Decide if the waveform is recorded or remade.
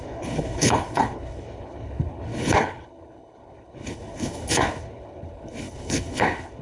remade